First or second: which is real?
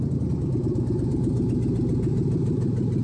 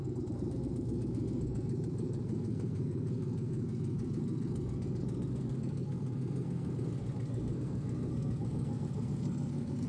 first